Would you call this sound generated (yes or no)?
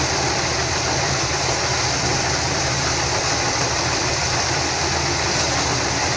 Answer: yes